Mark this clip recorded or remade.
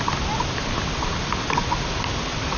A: recorded